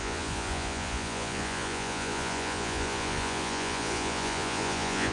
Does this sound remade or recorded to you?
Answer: remade